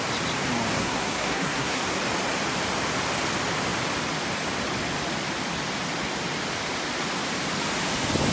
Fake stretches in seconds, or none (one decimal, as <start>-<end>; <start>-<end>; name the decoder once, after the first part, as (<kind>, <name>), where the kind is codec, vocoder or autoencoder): 0.7-1.8 (codec, SNAC)